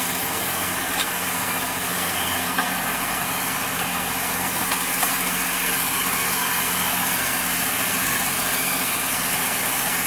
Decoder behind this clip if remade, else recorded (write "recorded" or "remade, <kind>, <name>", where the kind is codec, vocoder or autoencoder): remade, codec, SNAC